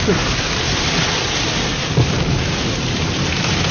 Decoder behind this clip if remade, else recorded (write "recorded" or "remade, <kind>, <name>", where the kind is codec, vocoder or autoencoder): recorded